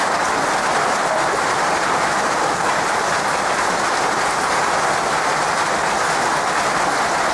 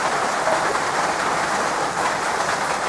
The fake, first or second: second